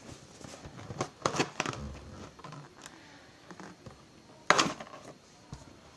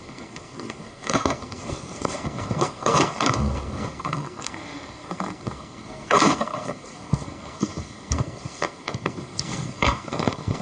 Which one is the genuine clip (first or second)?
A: first